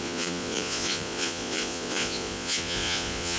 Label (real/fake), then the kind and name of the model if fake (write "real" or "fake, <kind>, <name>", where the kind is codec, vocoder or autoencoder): fake, vocoder, Vocos